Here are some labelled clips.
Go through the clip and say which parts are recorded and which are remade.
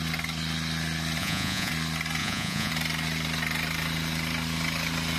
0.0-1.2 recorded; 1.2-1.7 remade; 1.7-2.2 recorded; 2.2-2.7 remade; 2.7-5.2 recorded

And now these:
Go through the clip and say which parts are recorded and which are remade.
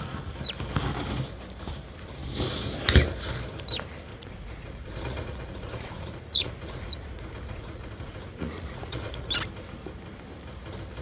0.0-4.1 recorded; 4.1-9.3 remade; 9.3-11.0 recorded